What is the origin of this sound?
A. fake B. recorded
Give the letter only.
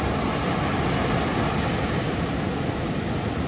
B